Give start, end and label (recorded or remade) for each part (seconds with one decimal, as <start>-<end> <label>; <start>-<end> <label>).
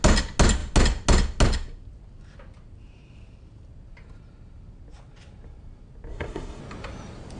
0.0-6.1 recorded; 6.1-6.6 remade; 6.6-7.4 recorded